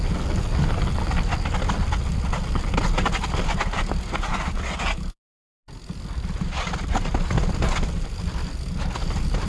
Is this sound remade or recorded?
recorded